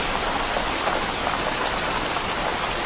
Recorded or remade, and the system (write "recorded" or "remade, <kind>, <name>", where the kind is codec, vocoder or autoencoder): recorded